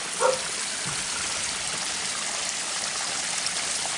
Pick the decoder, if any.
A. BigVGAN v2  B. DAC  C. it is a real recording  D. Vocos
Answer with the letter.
C